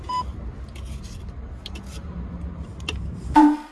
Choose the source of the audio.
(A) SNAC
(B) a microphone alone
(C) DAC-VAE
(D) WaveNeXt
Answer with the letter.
B